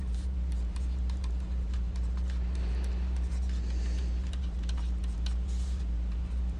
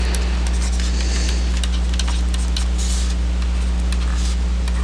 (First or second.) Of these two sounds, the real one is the second